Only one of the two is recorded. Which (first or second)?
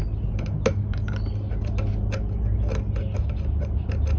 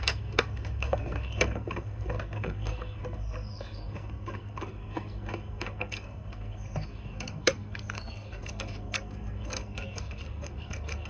first